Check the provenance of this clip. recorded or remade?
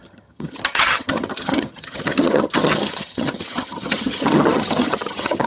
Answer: remade